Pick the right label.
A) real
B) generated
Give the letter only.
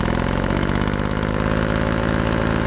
B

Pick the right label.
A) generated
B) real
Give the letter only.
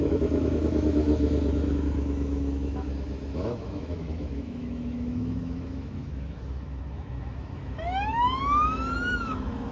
A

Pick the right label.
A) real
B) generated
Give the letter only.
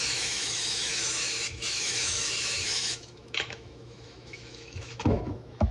B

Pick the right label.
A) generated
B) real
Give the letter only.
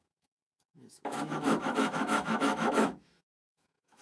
A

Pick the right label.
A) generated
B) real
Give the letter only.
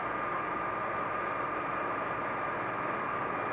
B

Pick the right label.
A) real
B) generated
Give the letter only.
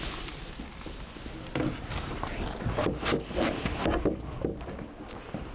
A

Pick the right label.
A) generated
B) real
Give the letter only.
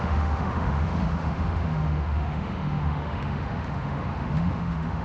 A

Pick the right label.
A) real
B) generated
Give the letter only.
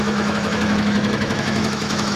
B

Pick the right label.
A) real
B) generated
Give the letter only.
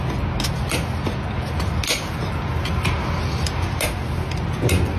A